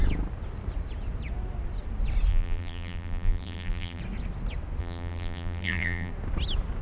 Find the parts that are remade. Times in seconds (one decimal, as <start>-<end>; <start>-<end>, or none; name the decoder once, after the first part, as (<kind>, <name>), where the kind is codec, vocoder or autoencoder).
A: 2.3-4.0 (vocoder, BigVGAN v2); 4.8-6.1